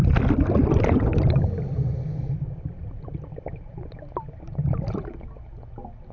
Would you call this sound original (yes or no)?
yes